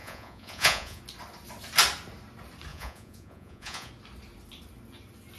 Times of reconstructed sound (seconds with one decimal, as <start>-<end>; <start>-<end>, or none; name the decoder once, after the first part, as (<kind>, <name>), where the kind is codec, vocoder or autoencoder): 0.0-1.0 (vocoder, Vocos); 2.7-3.9